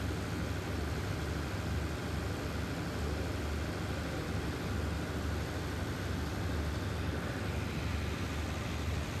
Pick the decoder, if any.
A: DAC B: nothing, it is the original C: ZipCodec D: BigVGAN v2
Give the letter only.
B